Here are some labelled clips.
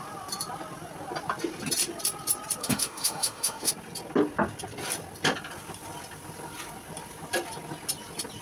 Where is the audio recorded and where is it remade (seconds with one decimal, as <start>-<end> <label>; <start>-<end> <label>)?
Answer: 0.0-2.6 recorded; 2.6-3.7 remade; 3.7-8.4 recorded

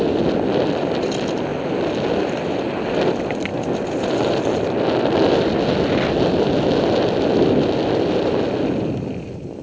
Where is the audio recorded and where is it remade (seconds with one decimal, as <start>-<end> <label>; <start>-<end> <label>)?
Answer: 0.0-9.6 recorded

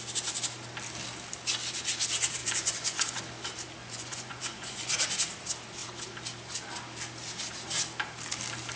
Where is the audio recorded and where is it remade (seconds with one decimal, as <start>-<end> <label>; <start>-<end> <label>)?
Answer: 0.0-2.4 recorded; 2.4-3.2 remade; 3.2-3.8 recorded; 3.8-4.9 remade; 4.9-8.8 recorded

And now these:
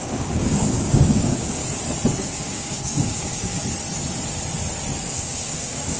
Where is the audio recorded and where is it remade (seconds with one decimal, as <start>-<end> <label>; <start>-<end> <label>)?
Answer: 0.0-1.6 remade; 1.6-2.1 recorded; 2.1-3.6 remade; 3.6-5.0 recorded; 5.0-6.0 remade